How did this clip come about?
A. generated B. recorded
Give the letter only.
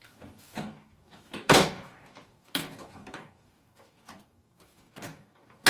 A